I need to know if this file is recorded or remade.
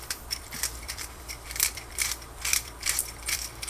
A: remade